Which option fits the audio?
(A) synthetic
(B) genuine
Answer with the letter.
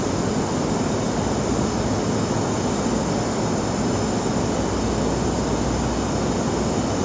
B